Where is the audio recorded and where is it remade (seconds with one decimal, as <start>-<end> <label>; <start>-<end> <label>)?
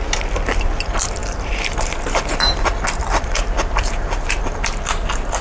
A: 0.0-1.2 recorded; 1.2-4.4 remade; 4.4-5.4 recorded